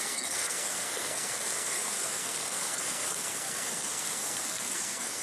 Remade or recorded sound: remade